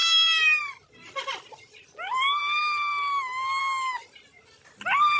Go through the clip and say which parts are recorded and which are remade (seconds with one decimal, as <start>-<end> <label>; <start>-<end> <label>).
0.0-2.4 remade; 2.4-5.2 recorded